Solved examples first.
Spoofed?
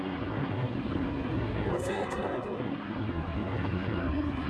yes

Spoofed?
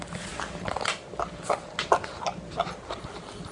no